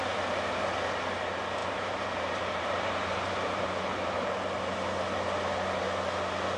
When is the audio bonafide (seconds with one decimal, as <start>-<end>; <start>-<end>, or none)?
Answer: 0.0-1.6; 4.3-6.6